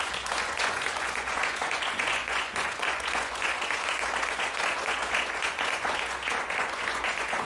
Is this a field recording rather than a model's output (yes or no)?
no